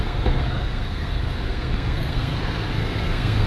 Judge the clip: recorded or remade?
remade